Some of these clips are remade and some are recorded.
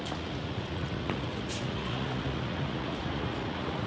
remade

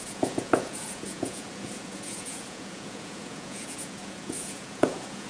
remade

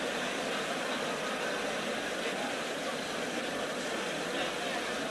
recorded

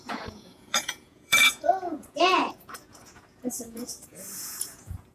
remade